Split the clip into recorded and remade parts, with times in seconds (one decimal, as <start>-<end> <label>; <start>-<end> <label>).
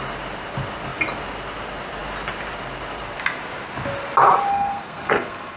0.0-4.5 recorded; 4.5-5.6 remade